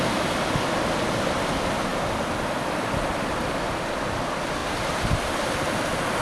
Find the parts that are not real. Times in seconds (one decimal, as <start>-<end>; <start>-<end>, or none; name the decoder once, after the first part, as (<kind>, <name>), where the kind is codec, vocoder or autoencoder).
none